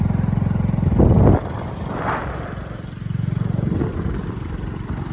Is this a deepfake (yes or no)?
no